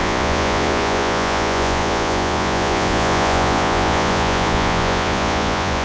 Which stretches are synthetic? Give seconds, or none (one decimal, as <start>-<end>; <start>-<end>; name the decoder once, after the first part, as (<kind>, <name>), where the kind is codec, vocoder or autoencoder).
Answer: 0.0-5.8 (vocoder, Vocos)